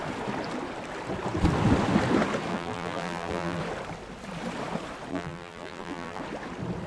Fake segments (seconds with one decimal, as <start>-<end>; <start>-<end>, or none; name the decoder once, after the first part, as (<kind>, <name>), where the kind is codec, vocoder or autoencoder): 2.5-3.6 (vocoder, BigVGAN v2); 5.1-6.2